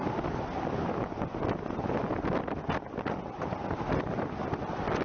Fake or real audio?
real